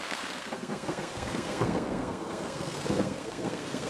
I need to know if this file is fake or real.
fake